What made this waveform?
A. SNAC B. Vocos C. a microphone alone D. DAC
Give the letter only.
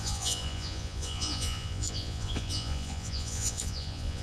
B